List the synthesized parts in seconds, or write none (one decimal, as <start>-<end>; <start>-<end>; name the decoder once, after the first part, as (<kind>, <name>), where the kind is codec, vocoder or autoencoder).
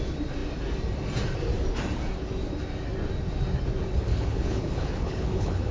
4.1-5.7 (codec, HILCodec)